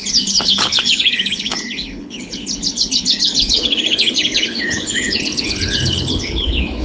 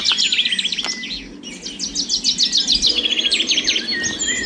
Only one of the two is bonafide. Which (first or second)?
second